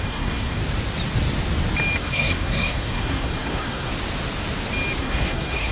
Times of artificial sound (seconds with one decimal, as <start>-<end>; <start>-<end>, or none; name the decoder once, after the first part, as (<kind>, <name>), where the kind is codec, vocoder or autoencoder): 0.0-0.6 (codec, SNAC); 2.0-3.9; 5.0-5.7

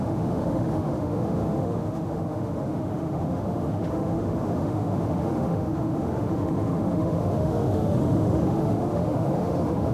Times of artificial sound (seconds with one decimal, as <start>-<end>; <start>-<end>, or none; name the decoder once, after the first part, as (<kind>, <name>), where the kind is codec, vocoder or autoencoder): 0.0-9.9 (autoencoder, DAC-VAE)